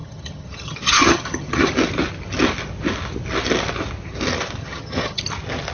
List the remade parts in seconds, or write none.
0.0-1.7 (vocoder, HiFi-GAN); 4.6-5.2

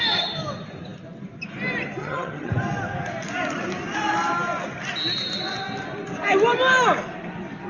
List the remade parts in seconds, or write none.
2.0-2.5 (vocoder, HiFi-GAN)

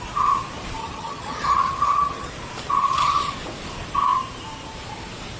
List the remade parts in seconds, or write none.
0.8-2.3 (vocoder, HiFi-GAN); 2.8-3.3

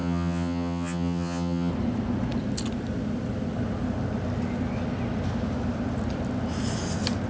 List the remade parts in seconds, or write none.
0.0-1.7 (vocoder, HiFi-GAN)